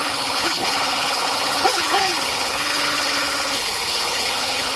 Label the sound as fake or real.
fake